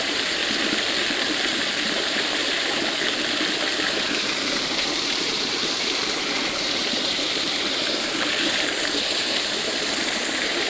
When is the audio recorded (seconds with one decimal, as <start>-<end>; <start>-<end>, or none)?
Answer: 0.4-1.4; 2.4-3.9